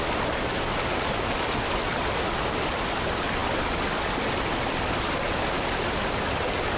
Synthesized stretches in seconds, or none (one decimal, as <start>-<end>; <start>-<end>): none